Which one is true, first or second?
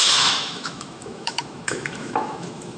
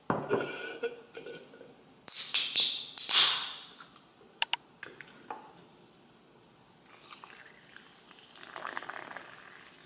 second